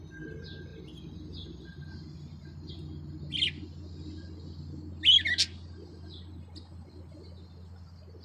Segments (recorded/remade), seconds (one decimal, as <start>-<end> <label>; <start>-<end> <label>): 0.0-8.2 recorded